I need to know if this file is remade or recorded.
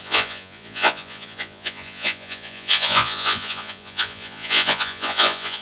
remade